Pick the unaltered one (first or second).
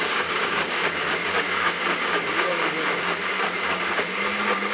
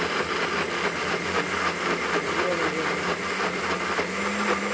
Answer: second